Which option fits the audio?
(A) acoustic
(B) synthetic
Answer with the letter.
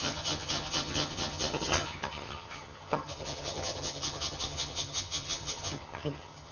B